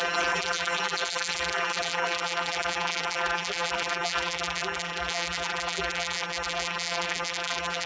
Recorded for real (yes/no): no